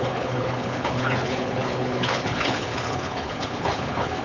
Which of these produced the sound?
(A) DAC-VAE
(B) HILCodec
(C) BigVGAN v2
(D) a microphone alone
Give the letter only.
B